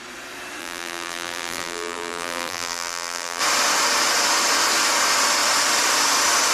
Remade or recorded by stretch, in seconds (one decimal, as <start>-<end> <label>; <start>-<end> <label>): 0.0-0.6 recorded; 0.6-3.4 remade; 3.4-6.5 recorded